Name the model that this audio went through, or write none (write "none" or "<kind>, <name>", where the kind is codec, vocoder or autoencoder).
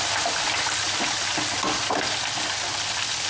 none